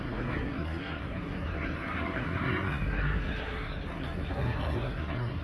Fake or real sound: fake